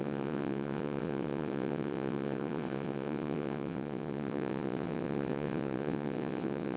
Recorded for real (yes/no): no